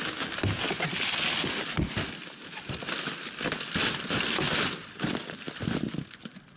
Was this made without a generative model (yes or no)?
yes